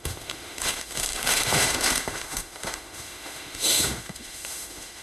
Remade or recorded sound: remade